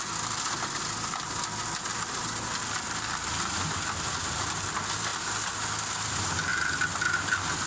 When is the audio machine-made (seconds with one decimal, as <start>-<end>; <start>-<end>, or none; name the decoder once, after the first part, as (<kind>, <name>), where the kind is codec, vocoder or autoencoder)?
none